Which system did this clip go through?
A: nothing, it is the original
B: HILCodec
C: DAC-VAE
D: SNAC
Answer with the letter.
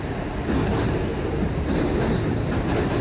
A